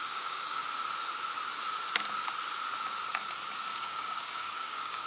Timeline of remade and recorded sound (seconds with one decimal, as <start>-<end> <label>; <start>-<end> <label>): 0.0-0.6 remade; 0.6-3.7 recorded; 3.7-5.1 remade